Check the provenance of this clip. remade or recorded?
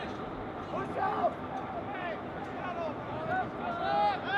recorded